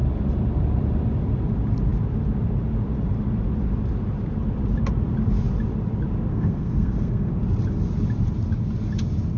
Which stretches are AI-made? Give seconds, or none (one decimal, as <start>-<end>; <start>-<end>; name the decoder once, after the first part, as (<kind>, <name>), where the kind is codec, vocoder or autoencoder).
6.3-7.3 (codec, SNAC)